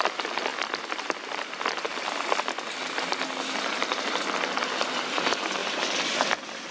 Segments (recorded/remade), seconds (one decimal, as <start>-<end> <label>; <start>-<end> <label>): 0.0-6.7 recorded

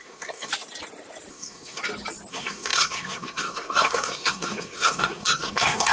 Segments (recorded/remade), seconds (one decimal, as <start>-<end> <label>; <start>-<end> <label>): 0.0-0.5 remade; 0.5-1.3 recorded; 1.3-1.8 remade; 1.8-2.3 recorded; 2.3-5.9 remade